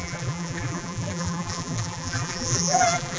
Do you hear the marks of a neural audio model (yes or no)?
yes